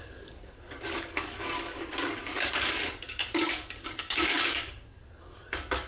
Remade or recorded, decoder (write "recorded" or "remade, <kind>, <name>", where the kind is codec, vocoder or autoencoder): remade, codec, DAC